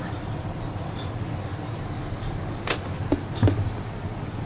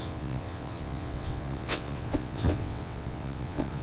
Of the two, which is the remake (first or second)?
second